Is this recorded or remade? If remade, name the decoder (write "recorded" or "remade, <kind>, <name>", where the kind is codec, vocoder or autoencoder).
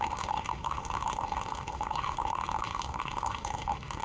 remade, autoencoder, DAC-VAE